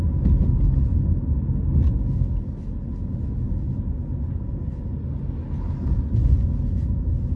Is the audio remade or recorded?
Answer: recorded